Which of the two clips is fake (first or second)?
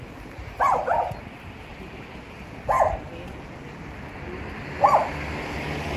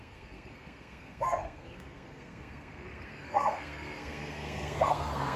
second